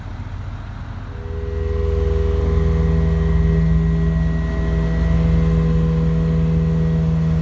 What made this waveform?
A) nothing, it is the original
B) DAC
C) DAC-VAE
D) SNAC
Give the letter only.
A